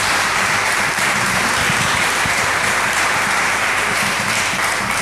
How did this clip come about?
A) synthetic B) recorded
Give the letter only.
A